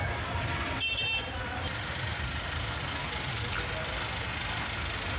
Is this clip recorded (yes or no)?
yes